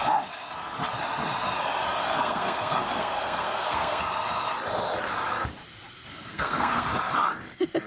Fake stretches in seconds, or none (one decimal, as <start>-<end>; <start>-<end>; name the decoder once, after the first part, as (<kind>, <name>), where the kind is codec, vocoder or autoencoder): 2.0-4.0 (codec, SNAC); 6.1-6.9